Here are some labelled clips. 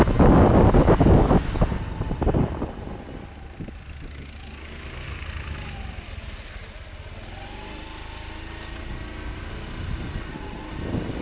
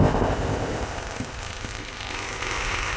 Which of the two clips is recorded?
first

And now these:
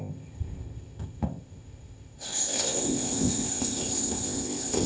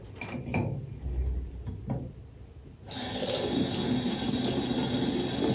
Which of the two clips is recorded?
second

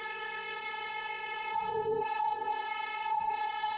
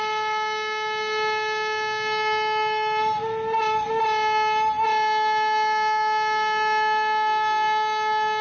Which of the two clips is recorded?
second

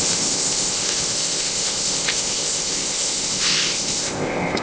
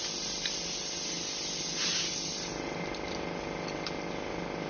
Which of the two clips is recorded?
second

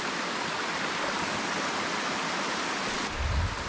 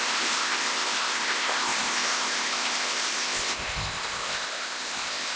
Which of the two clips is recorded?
first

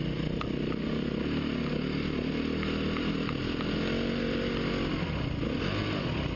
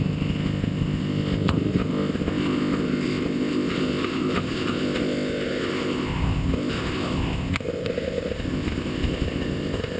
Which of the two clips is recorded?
first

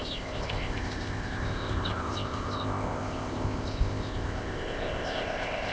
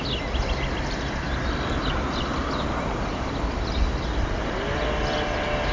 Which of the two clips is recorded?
second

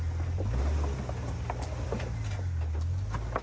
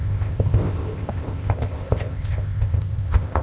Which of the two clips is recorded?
first